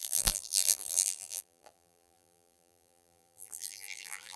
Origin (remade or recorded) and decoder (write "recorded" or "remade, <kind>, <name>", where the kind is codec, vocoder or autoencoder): remade, vocoder, BigVGAN v2